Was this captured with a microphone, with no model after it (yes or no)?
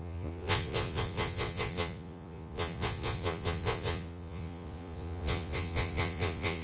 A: no